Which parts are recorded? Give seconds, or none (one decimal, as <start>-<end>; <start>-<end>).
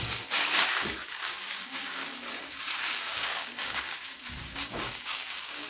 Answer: none